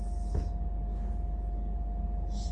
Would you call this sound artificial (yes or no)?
no